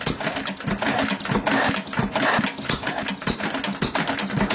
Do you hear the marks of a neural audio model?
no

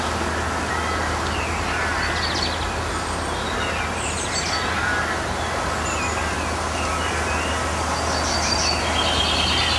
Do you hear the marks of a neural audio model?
no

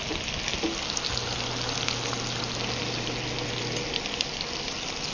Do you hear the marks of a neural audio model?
no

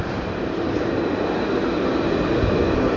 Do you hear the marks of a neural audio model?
no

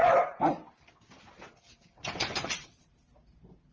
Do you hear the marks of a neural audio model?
yes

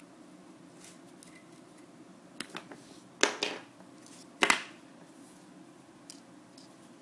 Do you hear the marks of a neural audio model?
no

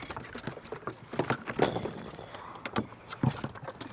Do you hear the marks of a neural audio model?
no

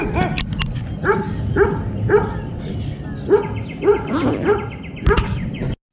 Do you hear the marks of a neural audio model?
no